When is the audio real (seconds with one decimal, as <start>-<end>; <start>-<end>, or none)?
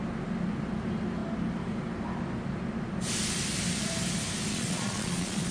0.0-4.5